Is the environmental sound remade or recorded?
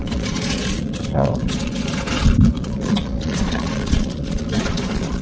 remade